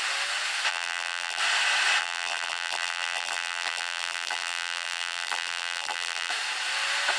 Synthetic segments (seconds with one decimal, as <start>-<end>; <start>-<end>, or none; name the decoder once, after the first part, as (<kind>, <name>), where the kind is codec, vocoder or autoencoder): 0.7-1.4 (vocoder, BigVGAN v2); 2.0-6.3